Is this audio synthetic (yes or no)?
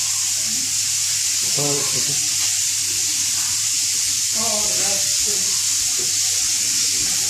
no